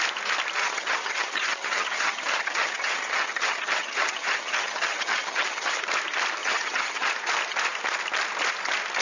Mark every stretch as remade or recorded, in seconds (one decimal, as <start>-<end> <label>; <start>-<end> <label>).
0.0-0.6 recorded; 0.6-5.8 remade; 5.8-6.4 recorded; 6.4-7.1 remade; 7.1-9.0 recorded